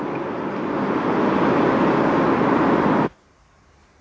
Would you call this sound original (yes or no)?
yes